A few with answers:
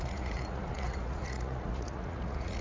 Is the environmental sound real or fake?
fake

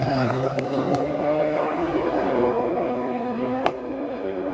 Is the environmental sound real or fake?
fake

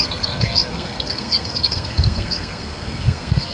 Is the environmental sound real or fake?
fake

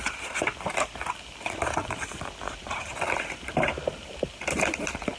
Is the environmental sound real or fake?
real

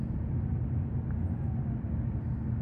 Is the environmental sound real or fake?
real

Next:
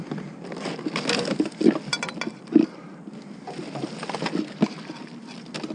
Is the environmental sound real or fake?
real